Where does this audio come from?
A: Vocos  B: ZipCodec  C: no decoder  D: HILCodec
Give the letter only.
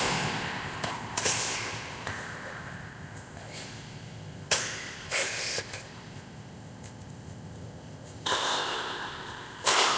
B